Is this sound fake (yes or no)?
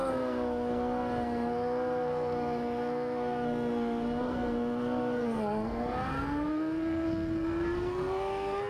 yes